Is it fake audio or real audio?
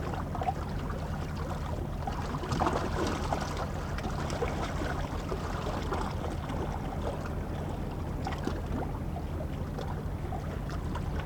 real